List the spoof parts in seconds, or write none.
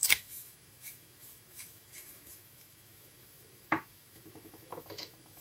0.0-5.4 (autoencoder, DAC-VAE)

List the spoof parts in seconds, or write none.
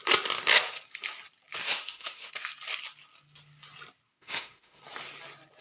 1.6-2.3 (autoencoder, DAC-VAE); 4.1-4.8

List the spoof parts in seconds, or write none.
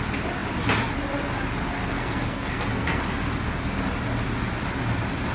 1.8-3.0 (codec, SNAC)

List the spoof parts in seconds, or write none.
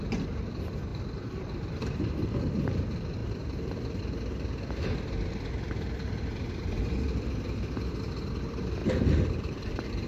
0.0-8.8 (vocoder, BigVGAN v2); 9.4-10.1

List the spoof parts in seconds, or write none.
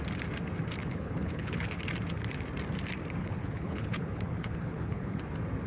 0.8-1.8 (codec, HILCodec); 3.2-5.2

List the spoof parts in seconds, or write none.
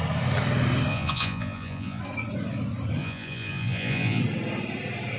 0.9-2.0 (vocoder, Vocos); 3.0-4.2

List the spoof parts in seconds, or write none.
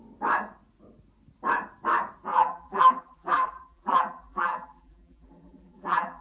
2.3-6.2 (vocoder, BigVGAN v2)